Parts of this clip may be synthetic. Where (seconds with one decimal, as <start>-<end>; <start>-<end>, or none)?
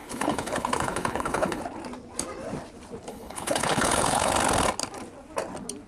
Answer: 0.0-1.6; 3.1-4.3